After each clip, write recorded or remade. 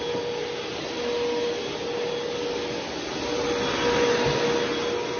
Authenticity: recorded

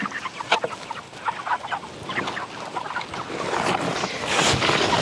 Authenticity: recorded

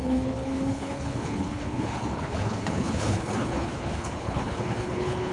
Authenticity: remade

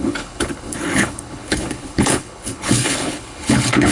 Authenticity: remade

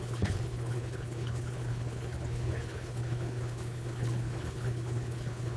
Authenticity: remade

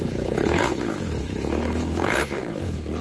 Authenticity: remade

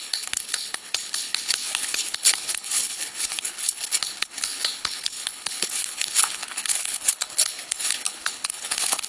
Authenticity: remade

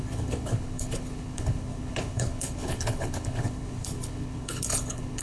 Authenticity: remade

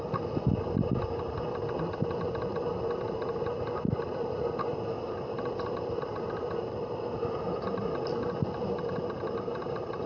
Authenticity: recorded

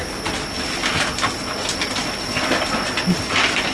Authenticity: recorded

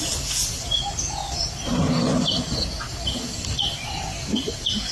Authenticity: recorded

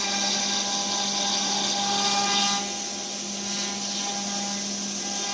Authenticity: recorded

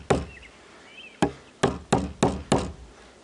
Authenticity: recorded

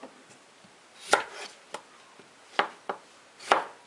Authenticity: recorded